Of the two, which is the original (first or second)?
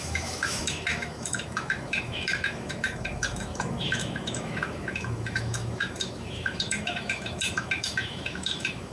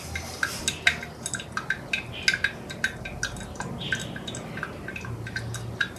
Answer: second